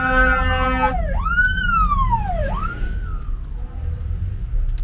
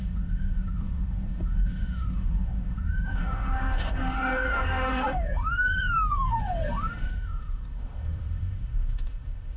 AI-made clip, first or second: second